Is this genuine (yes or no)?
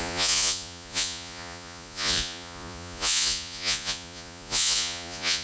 no